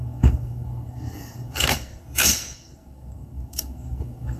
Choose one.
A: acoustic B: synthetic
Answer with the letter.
B